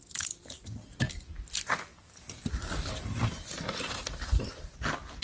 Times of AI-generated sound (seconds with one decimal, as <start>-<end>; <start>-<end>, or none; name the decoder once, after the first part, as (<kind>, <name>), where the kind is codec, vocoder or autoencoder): none